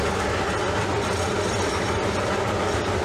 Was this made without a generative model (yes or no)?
yes